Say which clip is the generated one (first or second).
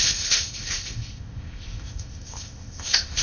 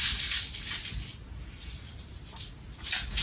first